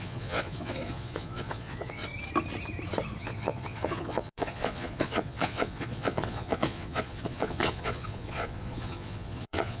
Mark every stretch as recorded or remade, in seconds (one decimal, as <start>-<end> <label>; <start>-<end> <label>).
0.0-2.0 remade; 2.0-3.2 recorded; 3.2-9.8 remade